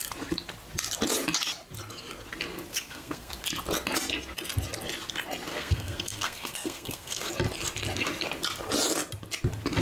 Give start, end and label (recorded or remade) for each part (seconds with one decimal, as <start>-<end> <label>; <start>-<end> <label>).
0.0-2.7 recorded; 2.7-3.3 remade; 3.3-5.5 recorded; 5.5-7.3 remade; 7.3-9.8 recorded